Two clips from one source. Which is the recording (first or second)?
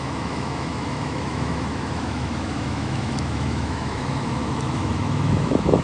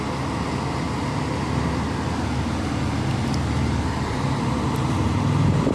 second